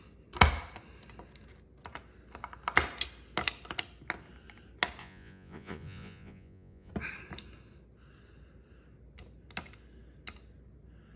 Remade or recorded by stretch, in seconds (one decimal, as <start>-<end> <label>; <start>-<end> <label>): 0.0-5.0 recorded; 5.0-6.9 remade; 6.9-11.2 recorded